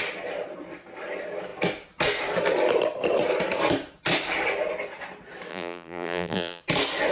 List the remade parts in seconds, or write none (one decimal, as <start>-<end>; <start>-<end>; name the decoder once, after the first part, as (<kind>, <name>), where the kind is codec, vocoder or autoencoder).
5.5-6.6 (vocoder, BigVGAN v2)